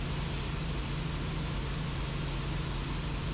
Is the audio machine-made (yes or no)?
no